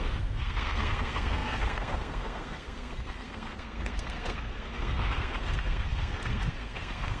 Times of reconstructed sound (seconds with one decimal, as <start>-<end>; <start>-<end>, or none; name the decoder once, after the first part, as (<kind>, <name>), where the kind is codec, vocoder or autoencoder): 0.0-7.2 (codec, SNAC)

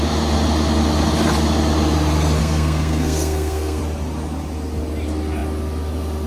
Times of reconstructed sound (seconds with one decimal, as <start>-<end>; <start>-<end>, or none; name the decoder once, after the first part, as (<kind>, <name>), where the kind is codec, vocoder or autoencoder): 2.4-3.8 (codec, SNAC)